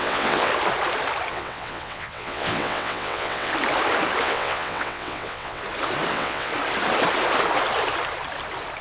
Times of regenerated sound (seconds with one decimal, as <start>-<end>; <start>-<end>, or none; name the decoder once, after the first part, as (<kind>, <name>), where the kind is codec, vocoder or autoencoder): 0.0-0.5 (vocoder, WaveNeXt); 1.3-3.5; 4.2-5.6; 6.1-6.5